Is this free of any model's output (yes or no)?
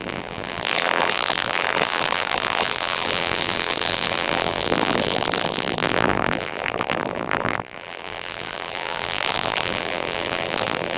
no